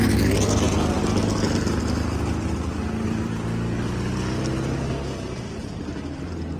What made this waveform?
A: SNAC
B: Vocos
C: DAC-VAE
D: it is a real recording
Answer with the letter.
D